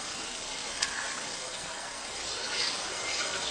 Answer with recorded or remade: remade